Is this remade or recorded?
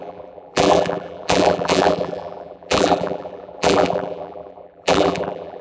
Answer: remade